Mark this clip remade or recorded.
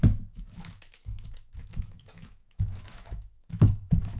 remade